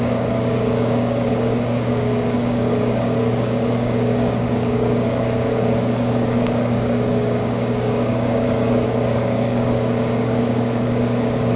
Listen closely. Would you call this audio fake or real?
fake